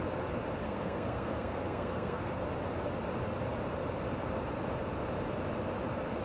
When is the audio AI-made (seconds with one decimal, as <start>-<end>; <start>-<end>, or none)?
0.6-2.3